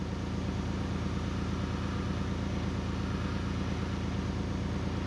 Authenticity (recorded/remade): recorded